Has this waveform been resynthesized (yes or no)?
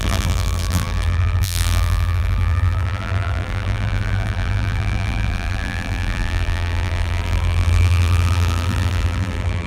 yes